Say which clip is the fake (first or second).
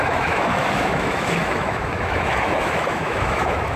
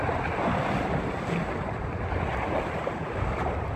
first